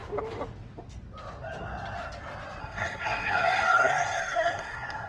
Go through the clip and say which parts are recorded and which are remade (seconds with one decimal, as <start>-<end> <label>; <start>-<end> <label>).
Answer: 0.0-2.6 recorded; 2.6-5.1 remade